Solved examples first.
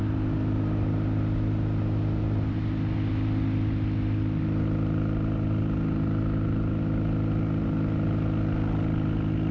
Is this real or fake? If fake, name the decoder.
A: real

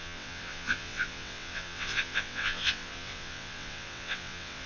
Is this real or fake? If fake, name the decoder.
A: fake, vocoder, WaveNeXt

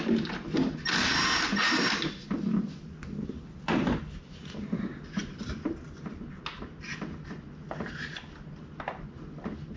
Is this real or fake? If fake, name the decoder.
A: real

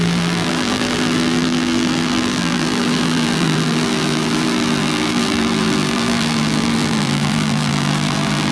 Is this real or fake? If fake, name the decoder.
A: fake, vocoder, BigVGAN v2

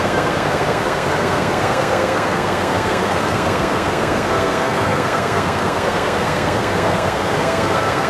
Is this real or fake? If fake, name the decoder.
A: fake, codec, SNAC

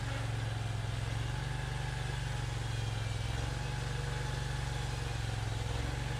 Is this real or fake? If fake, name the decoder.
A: real